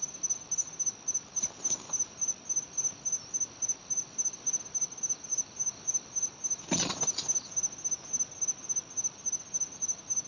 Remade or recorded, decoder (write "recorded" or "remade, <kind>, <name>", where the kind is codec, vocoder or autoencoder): recorded